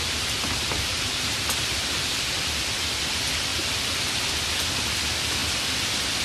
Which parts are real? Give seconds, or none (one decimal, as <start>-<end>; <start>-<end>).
0.0-0.9; 2.1-3.5; 4.0-6.2

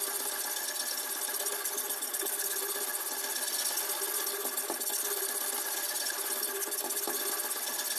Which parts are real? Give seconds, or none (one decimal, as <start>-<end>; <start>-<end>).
0.0-8.0

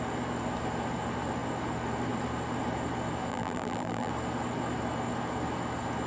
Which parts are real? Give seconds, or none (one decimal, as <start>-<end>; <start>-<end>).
0.0-3.3; 4.1-6.1

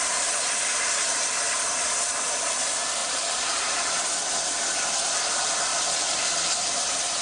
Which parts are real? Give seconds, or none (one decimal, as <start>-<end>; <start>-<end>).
0.0-0.7; 1.2-3.0; 4.1-5.7; 6.3-7.2

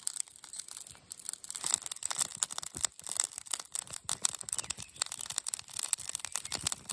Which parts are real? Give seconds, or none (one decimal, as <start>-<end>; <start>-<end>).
0.0-2.3; 6.3-6.9

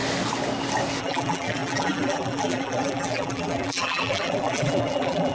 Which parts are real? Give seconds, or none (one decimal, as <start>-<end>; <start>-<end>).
0.0-1.0

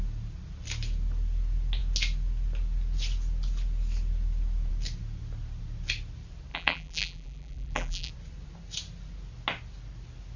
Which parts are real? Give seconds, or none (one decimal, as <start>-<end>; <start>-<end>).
0.0-6.5; 8.1-10.4

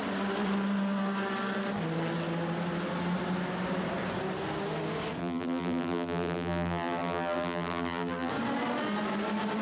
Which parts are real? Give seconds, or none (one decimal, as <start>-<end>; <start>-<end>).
0.0-5.2; 8.3-9.6